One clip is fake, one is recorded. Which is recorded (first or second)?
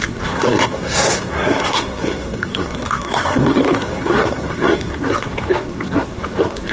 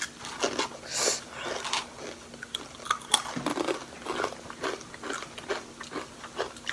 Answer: second